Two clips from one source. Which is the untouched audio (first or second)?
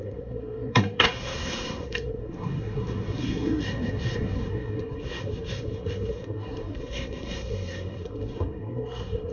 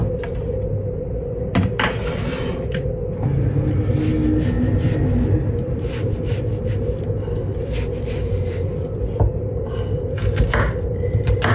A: second